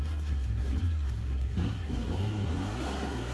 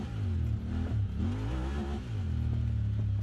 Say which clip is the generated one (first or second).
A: first